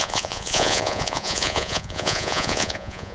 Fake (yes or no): yes